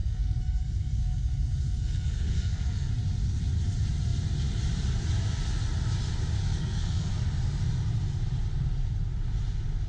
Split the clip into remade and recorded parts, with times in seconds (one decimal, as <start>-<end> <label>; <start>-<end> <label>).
0.0-2.9 remade; 2.9-6.4 recorded; 6.4-7.1 remade; 7.1-9.9 recorded